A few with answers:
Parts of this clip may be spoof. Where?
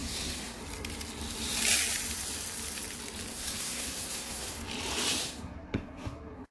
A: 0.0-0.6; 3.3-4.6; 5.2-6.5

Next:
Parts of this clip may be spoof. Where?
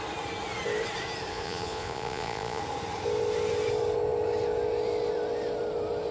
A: 1.3-2.6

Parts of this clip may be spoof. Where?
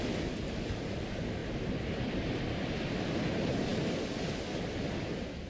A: none